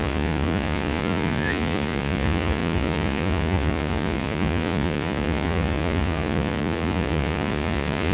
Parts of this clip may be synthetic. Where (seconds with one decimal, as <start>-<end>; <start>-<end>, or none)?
0.0-8.1